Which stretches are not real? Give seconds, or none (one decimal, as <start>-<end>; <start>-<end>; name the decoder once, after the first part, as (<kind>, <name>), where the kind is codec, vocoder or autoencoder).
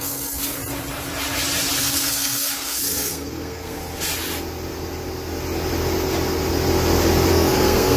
0.0-0.6 (codec, SNAC); 1.8-3.8; 7.3-8.0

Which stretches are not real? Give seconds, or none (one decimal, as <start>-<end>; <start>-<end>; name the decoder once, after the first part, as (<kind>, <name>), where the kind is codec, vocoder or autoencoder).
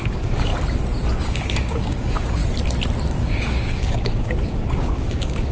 0.0-0.5 (codec, DAC); 1.1-2.4; 3.2-5.5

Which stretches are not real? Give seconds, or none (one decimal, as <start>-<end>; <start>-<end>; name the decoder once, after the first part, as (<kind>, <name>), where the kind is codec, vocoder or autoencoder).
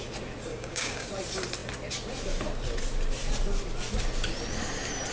0.5-1.1 (codec, DAC)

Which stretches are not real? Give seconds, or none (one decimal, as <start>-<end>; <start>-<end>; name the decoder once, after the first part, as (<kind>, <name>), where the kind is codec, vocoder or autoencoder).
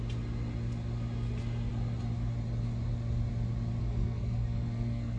3.8-5.2 (codec, SNAC)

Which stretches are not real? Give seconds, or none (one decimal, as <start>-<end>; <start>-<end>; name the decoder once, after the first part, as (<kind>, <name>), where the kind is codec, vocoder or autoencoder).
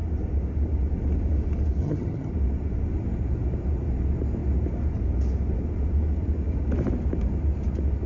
1.8-2.3 (vocoder, HiFi-GAN)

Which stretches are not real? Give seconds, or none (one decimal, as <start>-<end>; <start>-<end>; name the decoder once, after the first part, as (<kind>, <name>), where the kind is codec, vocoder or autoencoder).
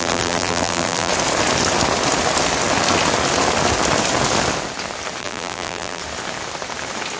0.0-1.1 (vocoder, BigVGAN v2); 5.2-6.0